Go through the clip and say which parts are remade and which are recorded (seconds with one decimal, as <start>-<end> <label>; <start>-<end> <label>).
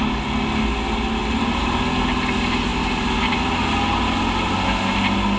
0.0-1.2 recorded; 1.2-1.8 remade; 1.8-5.4 recorded